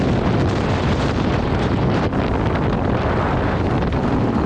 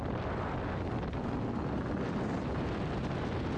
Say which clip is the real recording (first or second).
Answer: second